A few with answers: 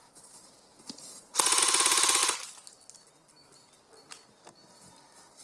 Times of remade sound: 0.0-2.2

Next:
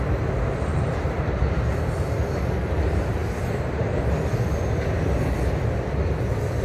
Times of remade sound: 0.7-1.6

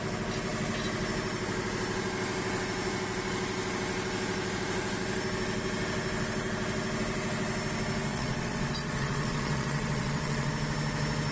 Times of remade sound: 8.1-10.5

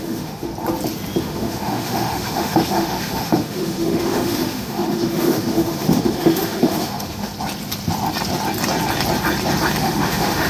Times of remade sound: 0.0-0.5; 1.2-7.3; 9.8-10.5

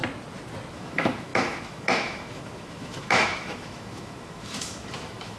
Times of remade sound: 0.7-5.4

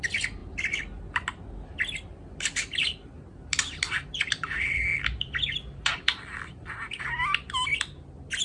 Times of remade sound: none